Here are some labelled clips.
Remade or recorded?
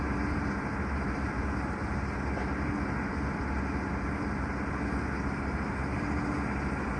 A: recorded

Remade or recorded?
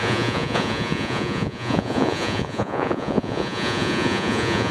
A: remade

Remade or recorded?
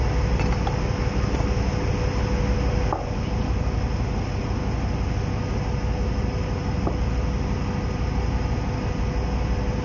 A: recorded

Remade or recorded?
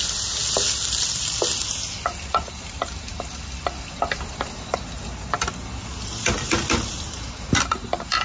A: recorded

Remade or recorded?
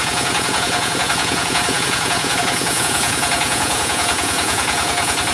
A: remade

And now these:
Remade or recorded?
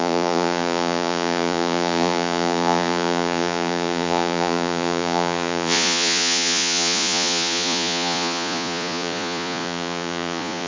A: remade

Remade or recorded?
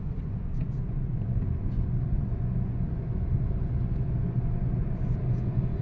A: remade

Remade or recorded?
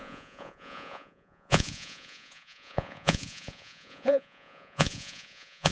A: remade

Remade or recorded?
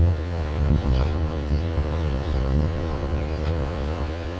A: remade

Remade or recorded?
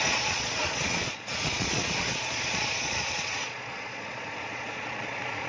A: remade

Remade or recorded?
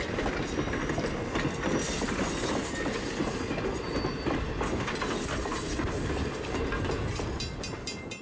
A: recorded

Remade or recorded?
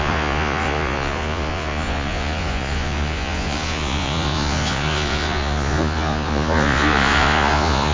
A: remade